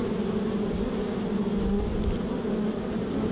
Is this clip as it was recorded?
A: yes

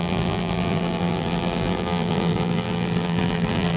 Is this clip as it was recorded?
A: no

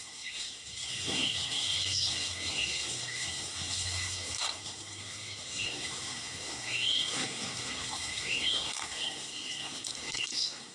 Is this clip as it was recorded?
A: no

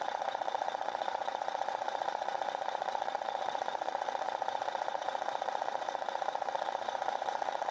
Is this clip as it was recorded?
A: no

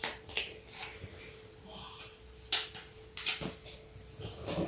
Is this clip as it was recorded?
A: yes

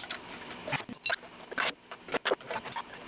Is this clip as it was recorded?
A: yes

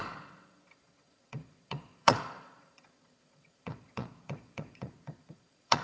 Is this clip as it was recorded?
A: no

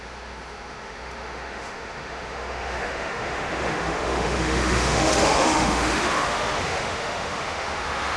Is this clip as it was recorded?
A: no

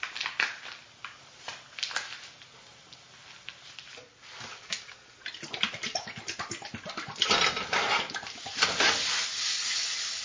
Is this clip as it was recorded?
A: yes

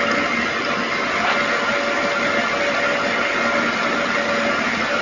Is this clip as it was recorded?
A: yes